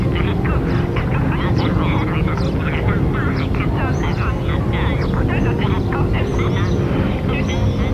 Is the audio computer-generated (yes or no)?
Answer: no